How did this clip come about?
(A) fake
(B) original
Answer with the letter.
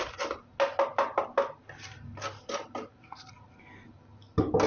B